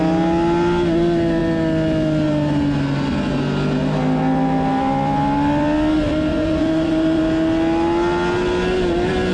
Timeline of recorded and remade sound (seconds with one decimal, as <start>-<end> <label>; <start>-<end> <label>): 0.0-6.3 recorded; 6.3-7.2 remade; 7.2-9.3 recorded

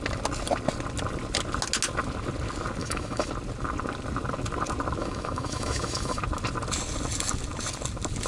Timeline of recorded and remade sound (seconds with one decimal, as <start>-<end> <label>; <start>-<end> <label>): 0.0-2.8 recorded; 2.8-3.3 remade; 3.3-5.0 recorded; 5.0-6.2 remade; 6.2-8.3 recorded

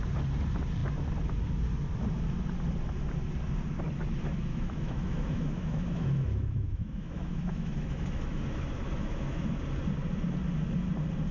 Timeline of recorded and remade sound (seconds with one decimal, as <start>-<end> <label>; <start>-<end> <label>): 0.0-4.5 recorded; 4.5-9.6 remade; 9.6-11.3 recorded

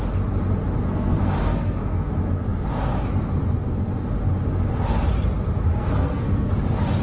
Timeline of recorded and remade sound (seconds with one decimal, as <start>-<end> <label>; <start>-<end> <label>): 0.0-0.9 recorded; 0.9-2.1 remade; 2.1-5.7 recorded; 5.7-6.5 remade; 6.5-7.0 recorded

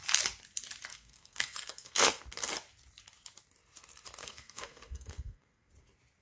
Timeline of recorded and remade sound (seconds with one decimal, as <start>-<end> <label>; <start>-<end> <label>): 0.0-0.9 recorded; 0.9-2.2 remade; 2.2-4.2 recorded; 4.2-5.7 remade; 5.7-6.2 recorded

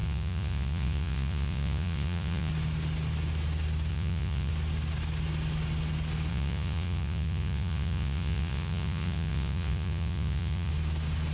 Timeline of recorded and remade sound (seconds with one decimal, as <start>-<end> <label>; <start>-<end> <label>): 0.0-2.5 remade; 2.5-3.9 recorded; 3.9-4.5 remade; 4.5-6.3 recorded; 6.3-10.7 remade; 10.7-11.3 recorded